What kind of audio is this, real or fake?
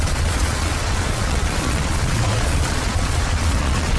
fake